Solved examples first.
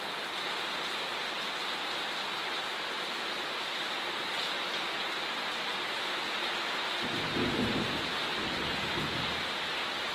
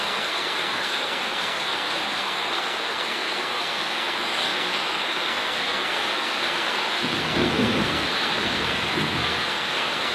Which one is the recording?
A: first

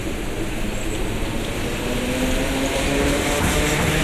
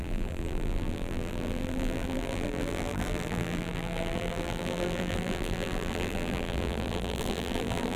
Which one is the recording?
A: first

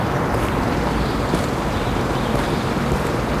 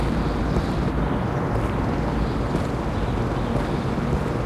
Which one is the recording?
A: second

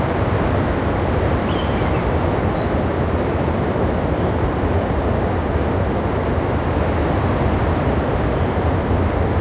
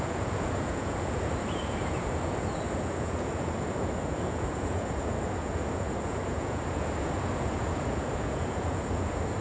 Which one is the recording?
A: first